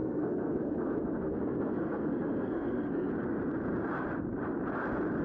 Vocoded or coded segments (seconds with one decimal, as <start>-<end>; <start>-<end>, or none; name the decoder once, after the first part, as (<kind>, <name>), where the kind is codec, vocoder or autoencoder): 0.0-3.1 (codec, SNAC)